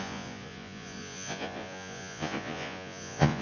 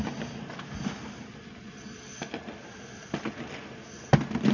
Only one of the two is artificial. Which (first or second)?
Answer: first